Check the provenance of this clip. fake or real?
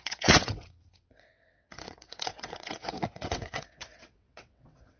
fake